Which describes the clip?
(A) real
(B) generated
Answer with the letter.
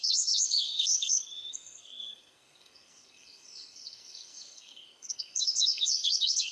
B